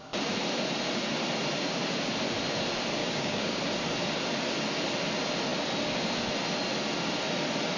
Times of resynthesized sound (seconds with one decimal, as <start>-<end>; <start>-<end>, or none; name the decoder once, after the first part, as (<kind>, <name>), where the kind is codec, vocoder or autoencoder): 3.0-3.6 (codec, DAC)